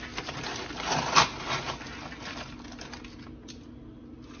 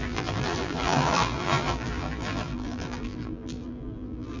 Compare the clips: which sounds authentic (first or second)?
first